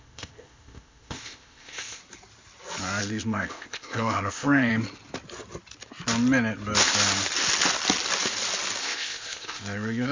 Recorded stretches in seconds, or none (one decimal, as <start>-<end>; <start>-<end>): 2.0-3.0; 4.7-8.8

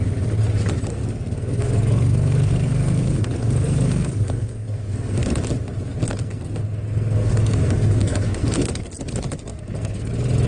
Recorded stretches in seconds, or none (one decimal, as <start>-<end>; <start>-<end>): 0.0-0.9; 5.3-6.2; 8.9-9.5; 10.1-10.5

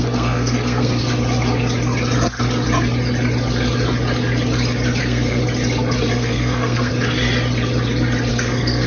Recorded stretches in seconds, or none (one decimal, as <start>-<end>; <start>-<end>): 1.0-5.0; 5.4-6.1; 6.9-8.3